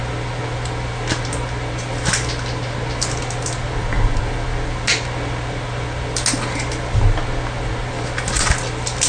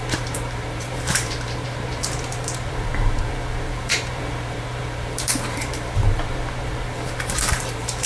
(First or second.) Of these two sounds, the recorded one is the first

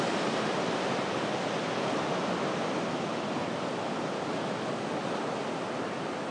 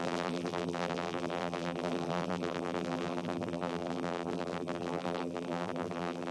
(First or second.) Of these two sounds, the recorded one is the first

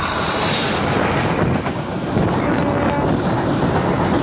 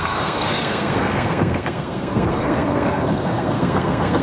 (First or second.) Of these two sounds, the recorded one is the first